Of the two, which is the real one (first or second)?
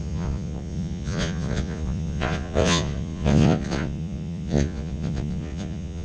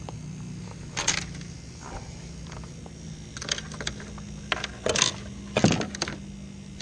second